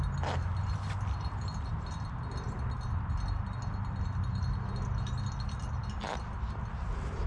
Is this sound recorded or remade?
recorded